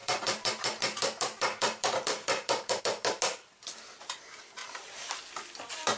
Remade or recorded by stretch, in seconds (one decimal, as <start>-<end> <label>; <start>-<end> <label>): 0.0-2.8 remade; 2.8-4.6 recorded; 4.6-5.2 remade; 5.2-6.0 recorded